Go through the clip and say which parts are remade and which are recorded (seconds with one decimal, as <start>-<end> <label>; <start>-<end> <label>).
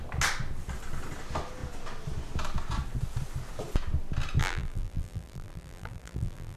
0.0-4.4 recorded; 4.4-6.6 remade